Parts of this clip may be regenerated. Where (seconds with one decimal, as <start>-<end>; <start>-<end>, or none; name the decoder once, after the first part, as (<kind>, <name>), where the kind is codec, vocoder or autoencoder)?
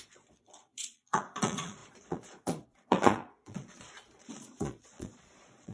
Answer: 0.0-5.7 (vocoder, Vocos)